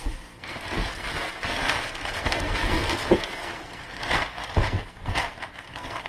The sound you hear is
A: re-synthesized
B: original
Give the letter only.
A